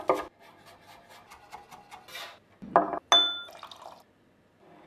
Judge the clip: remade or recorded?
recorded